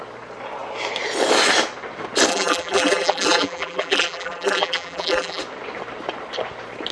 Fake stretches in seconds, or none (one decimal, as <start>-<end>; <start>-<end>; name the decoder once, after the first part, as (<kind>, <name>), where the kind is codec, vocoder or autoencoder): 2.3-5.4 (vocoder, BigVGAN v2)